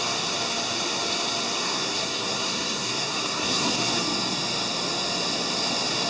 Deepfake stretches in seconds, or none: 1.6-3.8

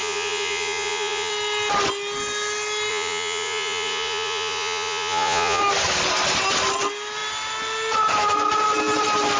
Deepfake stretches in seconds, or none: 0.0-1.3; 2.9-5.6

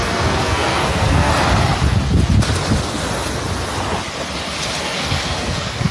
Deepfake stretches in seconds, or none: 0.0-1.3; 4.8-5.9

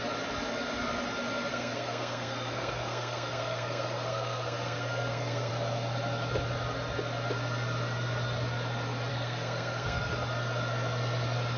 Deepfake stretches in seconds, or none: 1.5-5.5; 9.1-10.0

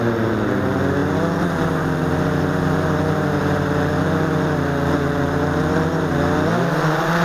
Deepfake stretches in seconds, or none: none